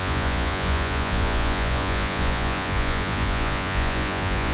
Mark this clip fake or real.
fake